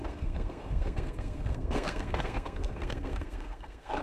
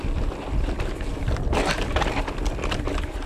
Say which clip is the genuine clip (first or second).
second